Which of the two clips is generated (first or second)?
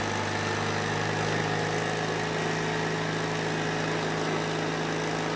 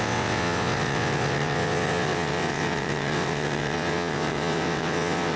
second